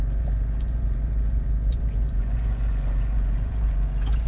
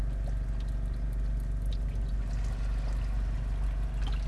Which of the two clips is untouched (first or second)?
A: second